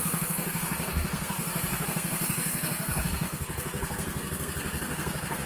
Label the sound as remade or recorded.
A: remade